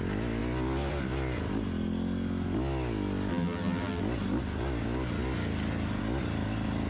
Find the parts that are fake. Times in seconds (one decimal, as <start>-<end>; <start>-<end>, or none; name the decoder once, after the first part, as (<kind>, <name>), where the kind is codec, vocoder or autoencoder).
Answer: 3.3-4.0 (vocoder, BigVGAN v2)